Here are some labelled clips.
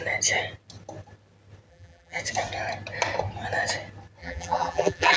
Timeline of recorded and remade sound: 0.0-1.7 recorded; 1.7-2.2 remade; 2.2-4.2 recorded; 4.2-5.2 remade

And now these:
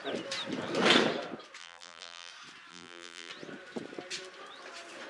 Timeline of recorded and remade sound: 0.0-1.6 recorded; 1.6-2.3 remade; 2.3-2.7 recorded; 2.7-3.3 remade; 3.3-5.1 recorded

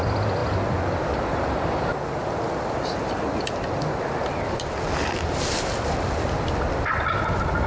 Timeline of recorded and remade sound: 0.0-7.7 recorded